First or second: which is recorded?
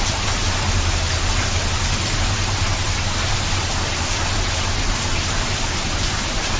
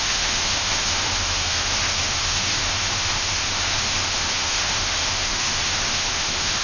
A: first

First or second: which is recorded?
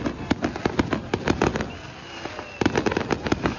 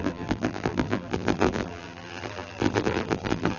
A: first